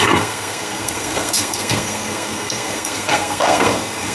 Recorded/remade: remade